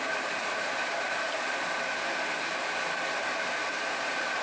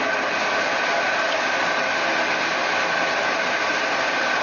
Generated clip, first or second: first